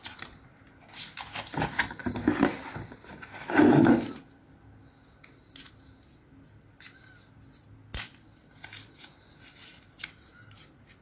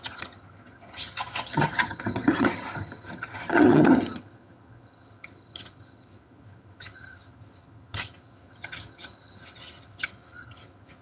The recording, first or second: first